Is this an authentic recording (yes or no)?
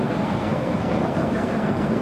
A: no